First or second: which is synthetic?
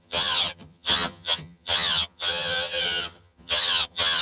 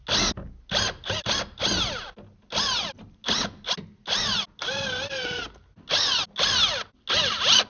first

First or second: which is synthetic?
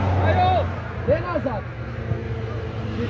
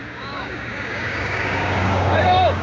second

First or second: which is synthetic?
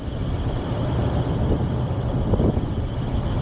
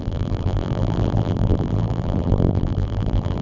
second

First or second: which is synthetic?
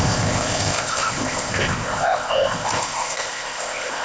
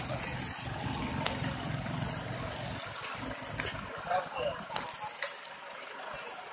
first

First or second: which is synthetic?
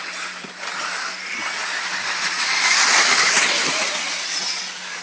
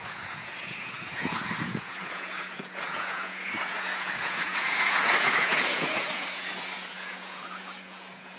second